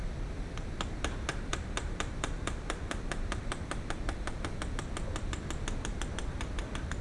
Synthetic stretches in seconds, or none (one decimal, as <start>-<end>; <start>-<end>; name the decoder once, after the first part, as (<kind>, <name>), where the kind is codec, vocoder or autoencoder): 1.5-4.4 (vocoder, BigVGAN v2)